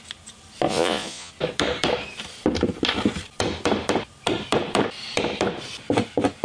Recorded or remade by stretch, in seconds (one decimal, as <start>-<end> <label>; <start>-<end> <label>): 0.0-0.7 recorded; 0.7-1.3 remade; 1.3-6.4 recorded